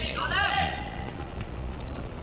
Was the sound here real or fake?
fake